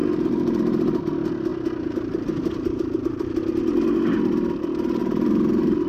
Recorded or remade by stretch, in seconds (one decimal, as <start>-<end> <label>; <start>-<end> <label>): 0.0-1.0 remade; 1.0-5.0 recorded; 5.0-5.9 remade